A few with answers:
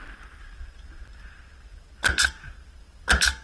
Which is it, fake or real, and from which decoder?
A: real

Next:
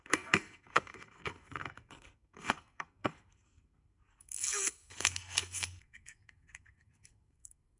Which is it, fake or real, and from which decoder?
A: fake, codec, SNAC